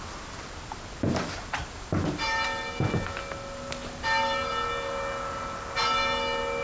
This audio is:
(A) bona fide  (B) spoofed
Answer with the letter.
A